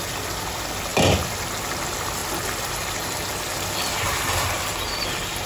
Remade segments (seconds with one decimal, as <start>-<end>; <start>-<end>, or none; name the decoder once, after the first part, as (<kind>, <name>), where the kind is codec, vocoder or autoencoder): none